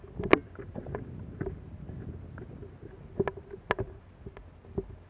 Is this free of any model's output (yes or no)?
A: yes